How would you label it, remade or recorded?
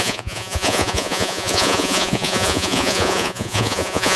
remade